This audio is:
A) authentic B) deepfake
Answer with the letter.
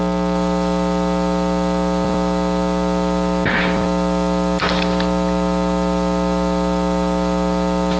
A